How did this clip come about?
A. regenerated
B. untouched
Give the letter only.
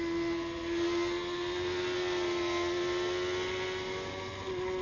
B